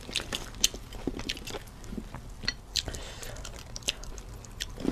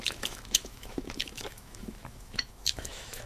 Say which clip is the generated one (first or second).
second